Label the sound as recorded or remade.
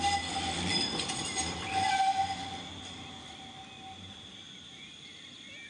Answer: recorded